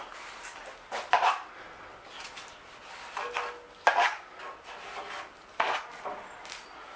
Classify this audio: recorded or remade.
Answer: recorded